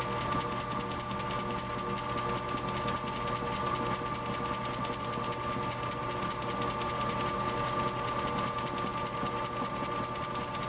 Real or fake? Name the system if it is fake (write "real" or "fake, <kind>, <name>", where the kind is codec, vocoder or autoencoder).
real